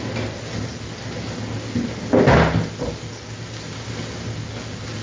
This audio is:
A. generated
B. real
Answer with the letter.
B